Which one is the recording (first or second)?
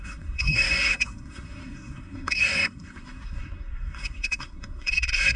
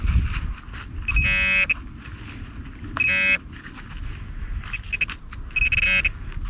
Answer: second